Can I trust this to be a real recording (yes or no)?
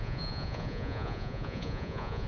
no